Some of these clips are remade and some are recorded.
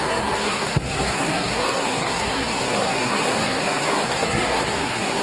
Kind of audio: remade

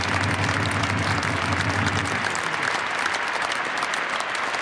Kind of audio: recorded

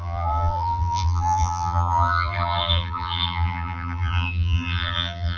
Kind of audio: remade